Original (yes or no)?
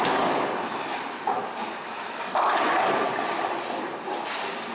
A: yes